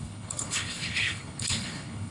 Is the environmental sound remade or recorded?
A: remade